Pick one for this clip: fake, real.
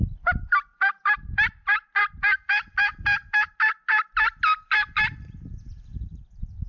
real